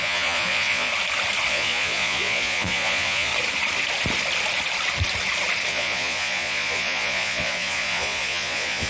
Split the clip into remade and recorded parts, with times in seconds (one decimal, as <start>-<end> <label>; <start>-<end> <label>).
0.0-0.9 remade; 0.9-1.5 recorded; 1.5-3.3 remade; 3.3-5.7 recorded; 5.7-8.9 remade